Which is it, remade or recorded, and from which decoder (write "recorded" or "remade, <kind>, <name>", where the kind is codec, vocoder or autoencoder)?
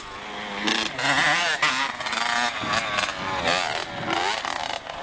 recorded